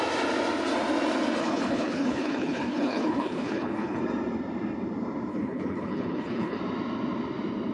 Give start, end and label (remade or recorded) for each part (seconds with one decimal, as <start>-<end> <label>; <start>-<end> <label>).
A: 0.0-1.4 recorded; 1.4-4.0 remade; 4.0-5.3 recorded; 5.3-6.6 remade; 6.6-7.7 recorded